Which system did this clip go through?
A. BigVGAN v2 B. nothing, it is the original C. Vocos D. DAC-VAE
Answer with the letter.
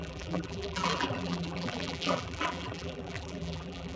A